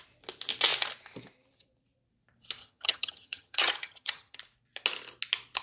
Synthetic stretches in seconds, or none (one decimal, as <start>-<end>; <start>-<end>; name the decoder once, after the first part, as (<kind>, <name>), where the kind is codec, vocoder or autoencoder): 2.6-4.4 (vocoder, HiFi-GAN)